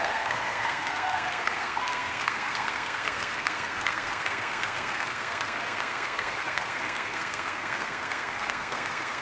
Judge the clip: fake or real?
fake